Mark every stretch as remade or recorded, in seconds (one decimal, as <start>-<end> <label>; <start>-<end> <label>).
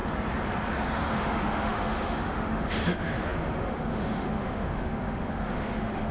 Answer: 0.0-1.1 recorded; 1.1-6.1 remade